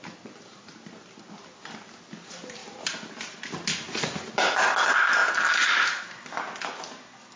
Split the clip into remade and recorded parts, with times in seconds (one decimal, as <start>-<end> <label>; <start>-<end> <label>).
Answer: 0.0-7.4 recorded